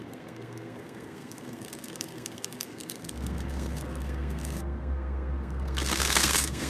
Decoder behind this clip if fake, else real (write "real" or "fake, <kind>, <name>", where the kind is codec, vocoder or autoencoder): fake, codec, SNAC